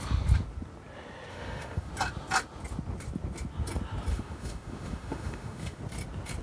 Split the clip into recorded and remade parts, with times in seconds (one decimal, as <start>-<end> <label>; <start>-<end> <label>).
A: 0.0-1.3 recorded; 1.3-1.9 remade; 1.9-4.1 recorded; 4.1-5.8 remade; 5.8-6.4 recorded

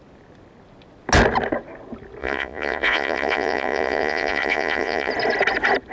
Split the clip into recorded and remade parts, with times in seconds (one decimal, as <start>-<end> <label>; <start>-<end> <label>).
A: 0.0-2.2 recorded; 2.2-5.1 remade; 5.1-5.9 recorded

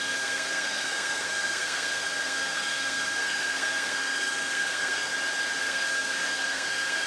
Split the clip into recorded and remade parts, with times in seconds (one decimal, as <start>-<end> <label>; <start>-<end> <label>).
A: 0.0-5.1 remade; 5.1-5.6 recorded; 5.6-7.1 remade

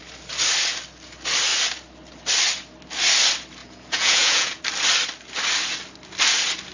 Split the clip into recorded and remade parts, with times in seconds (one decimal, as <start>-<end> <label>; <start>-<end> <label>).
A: 0.0-3.6 recorded; 3.6-4.6 remade; 4.6-6.7 recorded

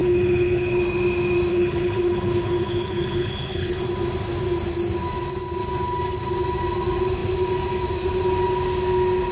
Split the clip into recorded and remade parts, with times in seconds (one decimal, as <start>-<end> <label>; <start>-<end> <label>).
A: 0.0-0.8 remade; 0.8-1.5 recorded; 1.5-3.8 remade; 3.8-9.3 recorded